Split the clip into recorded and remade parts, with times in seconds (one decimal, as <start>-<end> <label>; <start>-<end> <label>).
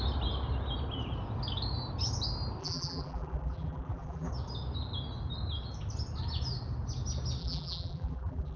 0.0-2.6 recorded; 2.6-4.3 remade; 4.3-7.4 recorded; 7.4-8.6 remade